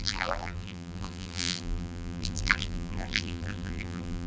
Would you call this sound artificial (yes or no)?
yes